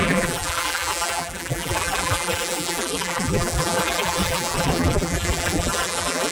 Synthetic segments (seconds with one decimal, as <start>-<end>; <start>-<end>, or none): 0.0-6.3

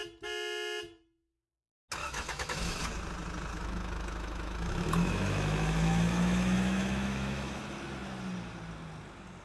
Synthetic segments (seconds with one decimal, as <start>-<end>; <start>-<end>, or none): 2.0-2.8; 3.5-7.6

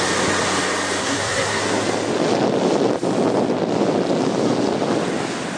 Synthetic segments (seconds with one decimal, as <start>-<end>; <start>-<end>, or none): 1.0-1.6

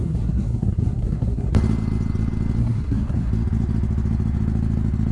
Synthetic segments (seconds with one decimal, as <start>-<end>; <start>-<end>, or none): 0.0-1.5; 2.6-3.3